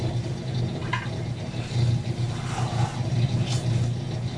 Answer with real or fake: real